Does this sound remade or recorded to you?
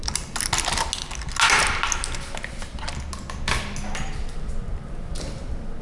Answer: recorded